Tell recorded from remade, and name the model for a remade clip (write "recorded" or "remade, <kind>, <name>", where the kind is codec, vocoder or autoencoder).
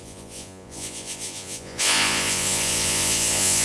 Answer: remade, vocoder, Vocos